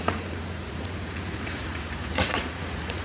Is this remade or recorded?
remade